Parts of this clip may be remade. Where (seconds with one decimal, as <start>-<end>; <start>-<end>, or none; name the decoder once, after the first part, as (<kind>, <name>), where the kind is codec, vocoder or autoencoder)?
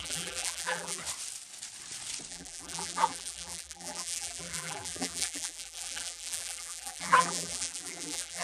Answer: 0.0-1.0 (vocoder, BigVGAN v2); 2.3-8.4